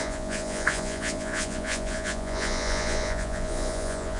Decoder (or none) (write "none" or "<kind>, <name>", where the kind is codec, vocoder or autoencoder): vocoder, Vocos